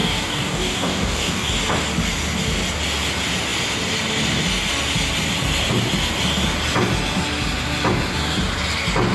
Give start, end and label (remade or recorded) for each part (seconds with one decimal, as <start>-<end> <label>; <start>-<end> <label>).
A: 0.0-1.5 remade; 1.5-9.1 recorded